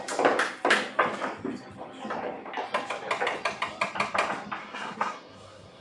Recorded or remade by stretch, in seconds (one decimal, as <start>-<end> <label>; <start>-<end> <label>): 0.0-4.6 recorded; 4.6-5.8 remade